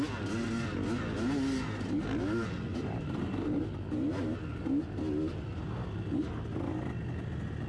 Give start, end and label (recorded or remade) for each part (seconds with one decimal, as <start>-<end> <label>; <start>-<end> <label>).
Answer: 0.0-2.7 recorded; 2.7-3.6 remade; 3.6-7.7 recorded